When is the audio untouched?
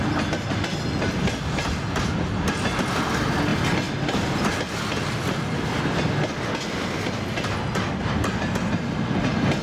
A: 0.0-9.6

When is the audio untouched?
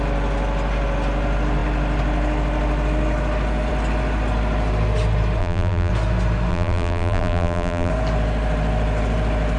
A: 0.0-5.4; 5.9-6.5; 7.9-9.6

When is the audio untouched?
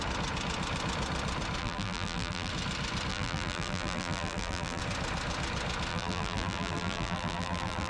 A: 0.0-1.6; 2.5-3.1; 4.8-5.9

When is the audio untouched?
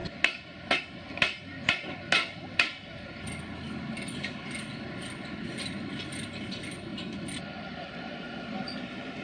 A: 0.0-6.9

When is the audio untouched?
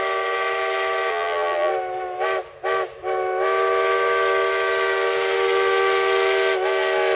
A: 0.0-1.1; 1.7-7.2